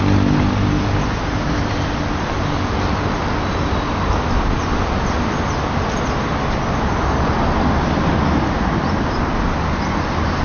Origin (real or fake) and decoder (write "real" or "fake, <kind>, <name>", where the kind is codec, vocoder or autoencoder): real